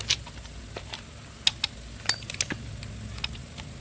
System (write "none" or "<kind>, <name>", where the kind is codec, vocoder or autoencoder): none